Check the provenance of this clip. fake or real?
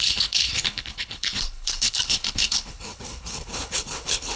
fake